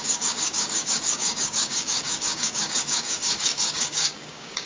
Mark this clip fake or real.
fake